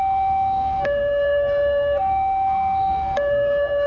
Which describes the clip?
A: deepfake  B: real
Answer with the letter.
A